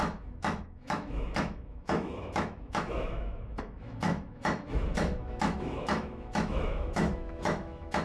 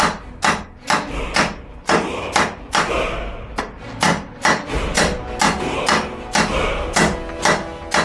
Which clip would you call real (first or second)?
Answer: second